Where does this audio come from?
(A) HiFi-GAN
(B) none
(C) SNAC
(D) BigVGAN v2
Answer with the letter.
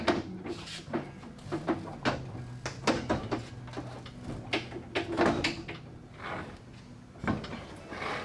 B